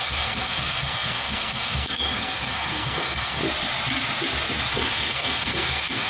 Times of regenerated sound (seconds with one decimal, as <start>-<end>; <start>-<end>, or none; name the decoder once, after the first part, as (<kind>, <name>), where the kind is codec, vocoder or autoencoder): 0.0-3.4 (codec, SNAC); 4.7-6.1